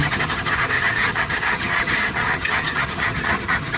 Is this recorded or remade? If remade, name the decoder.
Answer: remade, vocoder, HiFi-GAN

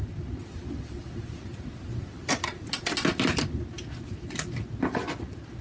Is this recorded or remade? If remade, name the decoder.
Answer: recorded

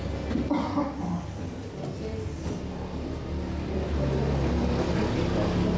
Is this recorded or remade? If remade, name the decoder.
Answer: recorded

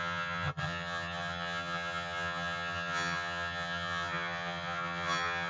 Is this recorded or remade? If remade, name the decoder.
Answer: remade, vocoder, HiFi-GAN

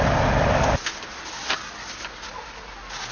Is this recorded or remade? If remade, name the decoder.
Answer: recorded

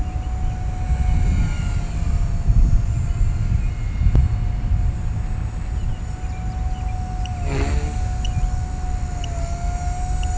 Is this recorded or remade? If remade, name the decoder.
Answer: recorded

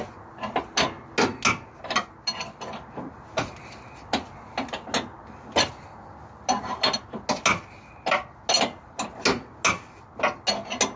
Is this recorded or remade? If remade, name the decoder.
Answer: recorded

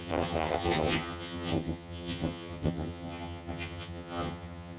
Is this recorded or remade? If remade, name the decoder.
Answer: remade, vocoder, HiFi-GAN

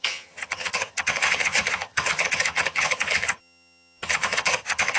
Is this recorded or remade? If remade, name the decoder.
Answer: remade, vocoder, HiFi-GAN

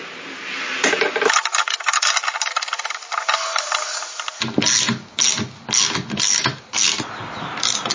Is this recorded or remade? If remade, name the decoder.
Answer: recorded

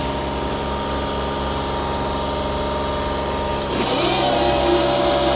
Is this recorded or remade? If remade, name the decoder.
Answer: recorded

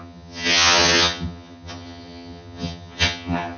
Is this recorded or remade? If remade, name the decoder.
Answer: remade, vocoder, HiFi-GAN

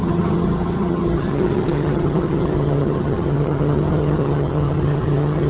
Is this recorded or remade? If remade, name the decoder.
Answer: remade, vocoder, HiFi-GAN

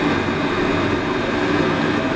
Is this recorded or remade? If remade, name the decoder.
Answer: recorded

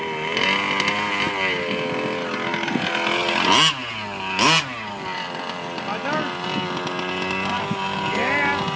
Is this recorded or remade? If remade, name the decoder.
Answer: recorded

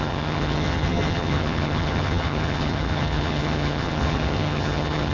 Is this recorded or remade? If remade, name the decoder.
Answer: remade, vocoder, HiFi-GAN